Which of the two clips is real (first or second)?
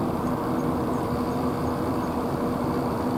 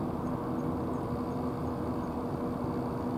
second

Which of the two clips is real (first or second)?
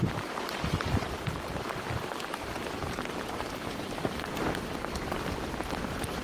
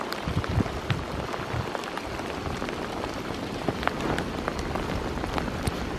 second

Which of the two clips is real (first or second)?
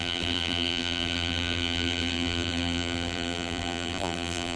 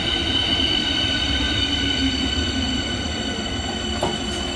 second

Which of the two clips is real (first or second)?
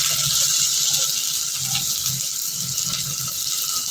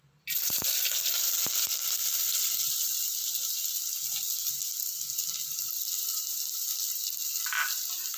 first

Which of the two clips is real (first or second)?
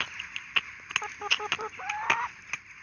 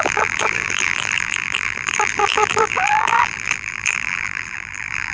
first